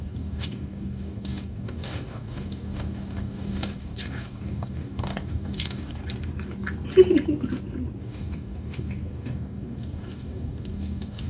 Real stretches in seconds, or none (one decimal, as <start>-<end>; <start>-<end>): 6.0-8.0